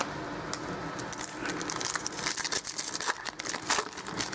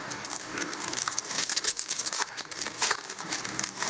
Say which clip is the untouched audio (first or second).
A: first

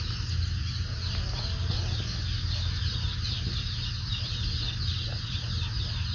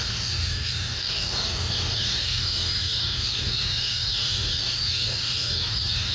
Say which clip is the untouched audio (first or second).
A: first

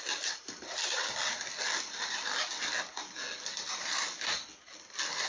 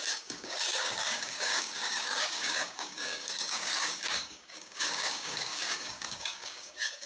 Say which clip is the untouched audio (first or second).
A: first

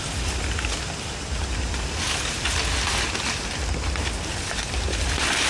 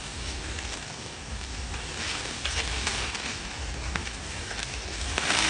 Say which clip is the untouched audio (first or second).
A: first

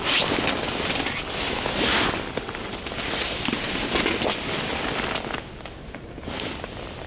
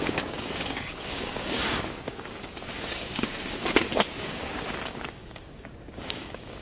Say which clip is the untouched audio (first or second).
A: first